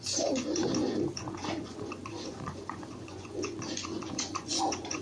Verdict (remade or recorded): remade